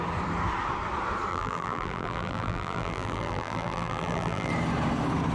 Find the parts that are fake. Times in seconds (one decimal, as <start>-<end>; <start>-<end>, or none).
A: 1.3-4.5